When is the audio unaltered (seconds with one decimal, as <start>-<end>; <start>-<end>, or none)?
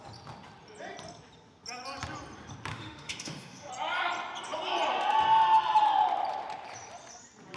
0.0-2.7; 3.7-7.6